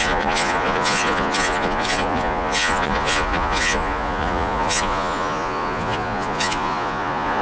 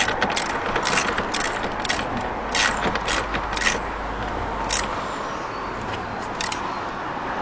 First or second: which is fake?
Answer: first